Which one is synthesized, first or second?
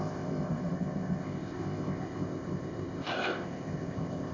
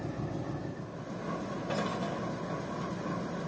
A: first